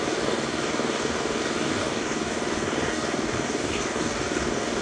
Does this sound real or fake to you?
fake